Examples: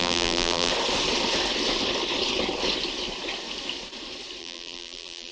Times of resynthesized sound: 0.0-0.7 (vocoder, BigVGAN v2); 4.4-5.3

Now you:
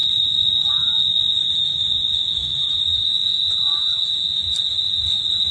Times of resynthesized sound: 1.4-1.9 (vocoder, BigVGAN v2); 2.5-3.1

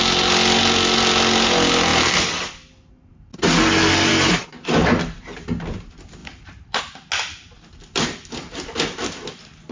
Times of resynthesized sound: 1.9-2.9 (vocoder, BigVGAN v2); 6.2-6.8

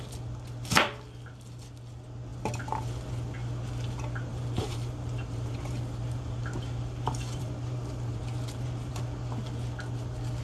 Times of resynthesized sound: 4.3-9.0 (vocoder, BigVGAN v2)

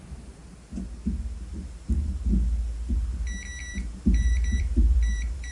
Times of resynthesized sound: 0.0-0.4 (vocoder, BigVGAN v2); 3.7-5.5

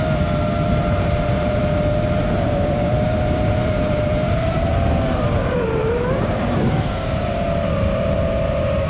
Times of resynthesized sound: 0.0-1.6 (vocoder, BigVGAN v2); 2.2-8.9

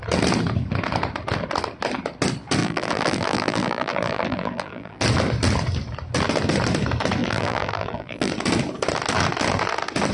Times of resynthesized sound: 2.6-5.0 (vocoder, BigVGAN v2); 7.2-8.3

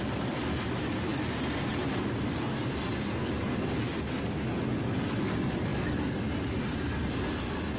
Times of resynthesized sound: none